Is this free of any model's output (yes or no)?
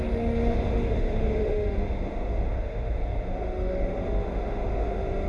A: no